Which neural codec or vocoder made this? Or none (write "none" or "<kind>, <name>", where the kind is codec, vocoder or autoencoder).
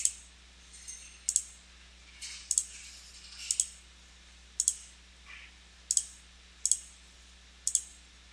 none